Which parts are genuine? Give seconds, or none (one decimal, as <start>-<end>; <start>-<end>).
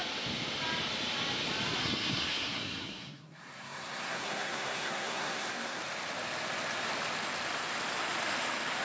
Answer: 0.0-1.8; 5.8-8.8